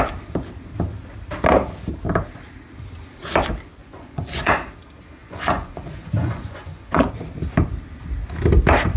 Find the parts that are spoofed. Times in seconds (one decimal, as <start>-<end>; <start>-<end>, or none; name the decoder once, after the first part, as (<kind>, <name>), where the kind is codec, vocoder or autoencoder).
3.8-4.7 (vocoder, Vocos); 5.2-7.1